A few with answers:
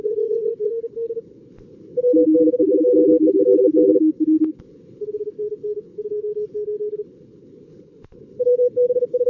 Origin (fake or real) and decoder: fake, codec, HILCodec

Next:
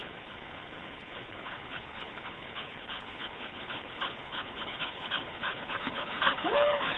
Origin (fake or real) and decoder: fake, codec, HILCodec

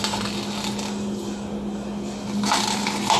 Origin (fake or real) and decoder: real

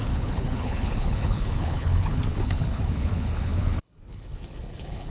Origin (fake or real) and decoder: fake, codec, HILCodec